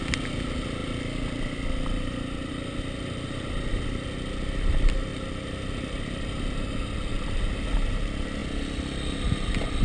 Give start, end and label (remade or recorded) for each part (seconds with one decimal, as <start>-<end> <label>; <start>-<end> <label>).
0.0-9.8 recorded